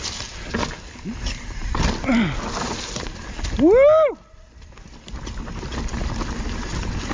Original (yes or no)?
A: yes